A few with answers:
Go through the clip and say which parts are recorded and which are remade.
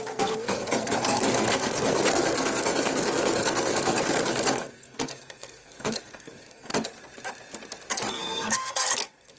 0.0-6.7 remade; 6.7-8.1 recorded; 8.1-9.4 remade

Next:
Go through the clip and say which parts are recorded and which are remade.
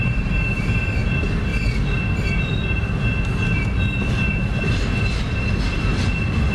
0.0-1.5 remade; 1.5-5.0 recorded; 5.0-6.5 remade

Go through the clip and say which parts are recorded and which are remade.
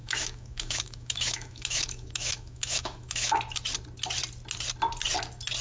0.0-3.4 remade; 3.4-5.6 recorded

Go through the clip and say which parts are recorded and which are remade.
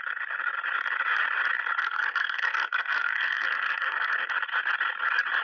0.0-1.8 recorded; 1.8-4.3 remade; 4.3-5.4 recorded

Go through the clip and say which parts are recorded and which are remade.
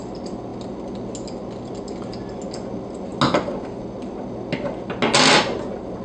0.0-6.0 recorded